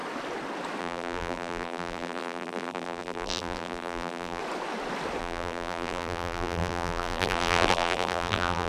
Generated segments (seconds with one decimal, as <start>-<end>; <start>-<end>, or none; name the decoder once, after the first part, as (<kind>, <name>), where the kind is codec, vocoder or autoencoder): 0.8-4.4 (vocoder, BigVGAN v2); 5.2-8.7